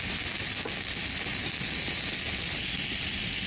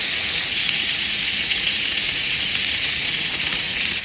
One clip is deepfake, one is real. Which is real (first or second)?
first